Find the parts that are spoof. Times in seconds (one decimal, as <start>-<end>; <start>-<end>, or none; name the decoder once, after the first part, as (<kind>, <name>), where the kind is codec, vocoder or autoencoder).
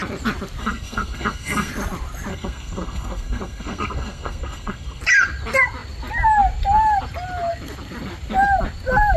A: 0.6-1.7 (codec, SNAC); 2.3-5.0